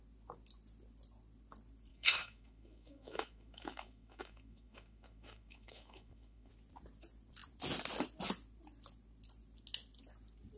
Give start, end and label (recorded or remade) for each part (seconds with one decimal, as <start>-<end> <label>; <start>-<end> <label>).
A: 0.0-1.9 recorded; 1.9-6.5 remade; 6.5-10.6 recorded